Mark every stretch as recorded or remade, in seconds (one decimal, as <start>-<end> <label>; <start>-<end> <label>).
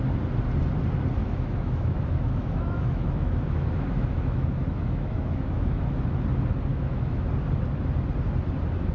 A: 0.0-1.2 recorded; 1.2-6.0 remade; 6.0-6.7 recorded; 6.7-7.3 remade; 7.3-8.9 recorded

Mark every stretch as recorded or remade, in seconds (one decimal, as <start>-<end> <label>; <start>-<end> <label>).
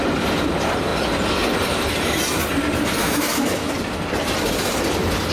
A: 0.0-3.0 recorded; 3.0-3.7 remade; 3.7-5.3 recorded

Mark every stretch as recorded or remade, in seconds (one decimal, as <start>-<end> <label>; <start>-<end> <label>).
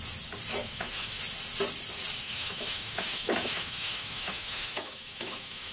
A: 0.0-0.6 recorded; 0.6-1.2 remade; 1.2-2.2 recorded; 2.2-5.7 remade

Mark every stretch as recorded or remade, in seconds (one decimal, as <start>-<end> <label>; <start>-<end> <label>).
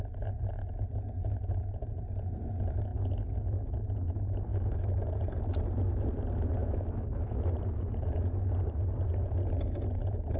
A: 0.0-4.5 recorded; 4.5-5.1 remade; 5.1-6.6 recorded; 6.6-7.5 remade; 7.5-10.4 recorded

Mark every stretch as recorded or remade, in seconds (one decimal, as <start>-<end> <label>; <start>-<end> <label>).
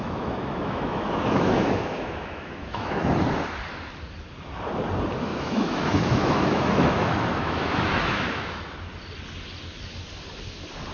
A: 0.0-3.1 remade; 3.1-5.3 recorded; 5.3-8.6 remade; 8.6-10.9 recorded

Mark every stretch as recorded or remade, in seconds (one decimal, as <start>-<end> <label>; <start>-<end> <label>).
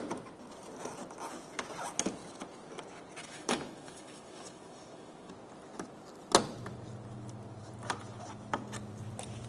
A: 0.0-3.2 recorded; 3.2-5.3 remade; 5.3-9.5 recorded